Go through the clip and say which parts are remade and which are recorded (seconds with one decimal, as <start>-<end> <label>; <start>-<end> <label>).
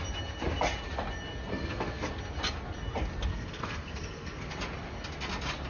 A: 0.0-1.5 recorded; 1.5-2.1 remade; 2.1-3.3 recorded; 3.3-4.5 remade; 4.5-5.7 recorded